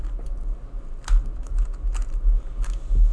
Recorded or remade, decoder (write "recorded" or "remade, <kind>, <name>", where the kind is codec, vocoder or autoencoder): recorded